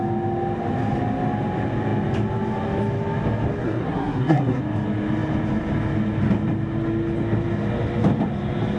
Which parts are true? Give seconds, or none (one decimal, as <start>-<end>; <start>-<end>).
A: 0.0-3.6; 4.6-8.8